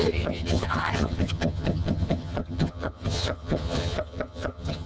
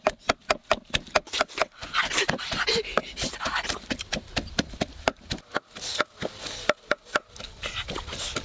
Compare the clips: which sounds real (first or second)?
second